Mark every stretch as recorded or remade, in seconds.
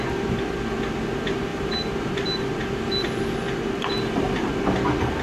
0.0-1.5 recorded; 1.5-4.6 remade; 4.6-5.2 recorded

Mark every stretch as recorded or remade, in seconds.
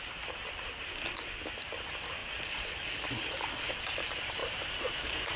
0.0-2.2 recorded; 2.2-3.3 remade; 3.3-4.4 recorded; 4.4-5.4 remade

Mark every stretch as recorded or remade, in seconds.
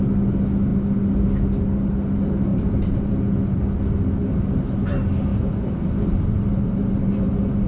0.0-2.5 recorded; 2.5-3.1 remade; 3.1-5.3 recorded; 5.3-7.7 remade